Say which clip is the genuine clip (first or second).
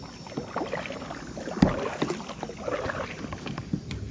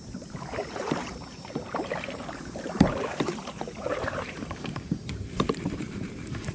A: first